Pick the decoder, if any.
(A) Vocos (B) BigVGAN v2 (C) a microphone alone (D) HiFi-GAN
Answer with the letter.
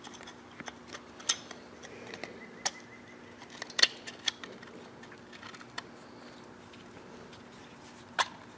C